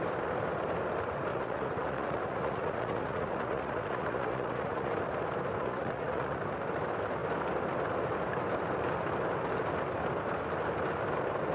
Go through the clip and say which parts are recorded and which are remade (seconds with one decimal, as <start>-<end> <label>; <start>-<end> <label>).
0.0-1.3 recorded; 1.3-4.9 remade; 4.9-5.6 recorded; 5.6-6.4 remade; 6.4-11.5 recorded